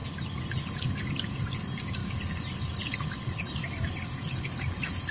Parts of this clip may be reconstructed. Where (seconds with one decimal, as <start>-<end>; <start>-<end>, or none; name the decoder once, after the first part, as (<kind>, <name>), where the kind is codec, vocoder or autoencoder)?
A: none